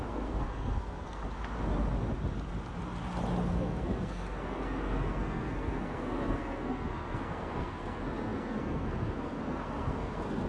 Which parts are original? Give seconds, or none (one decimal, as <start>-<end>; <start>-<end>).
1.2-3.5